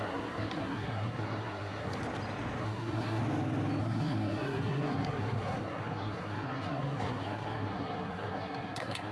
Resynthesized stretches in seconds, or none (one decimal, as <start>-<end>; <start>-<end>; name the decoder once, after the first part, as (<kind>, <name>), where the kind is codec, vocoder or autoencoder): 0.0-2.0 (codec, SNAC); 2.6-3.2; 3.8-9.1